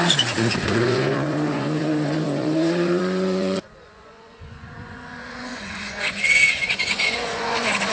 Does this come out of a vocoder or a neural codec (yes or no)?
yes